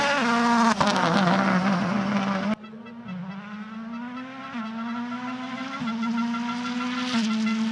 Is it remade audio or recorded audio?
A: recorded